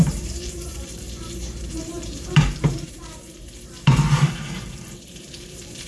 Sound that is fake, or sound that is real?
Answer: fake